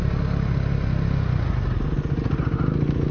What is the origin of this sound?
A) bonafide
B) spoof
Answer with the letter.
A